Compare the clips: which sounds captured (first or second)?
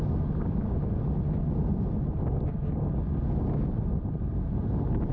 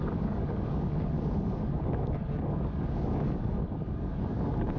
first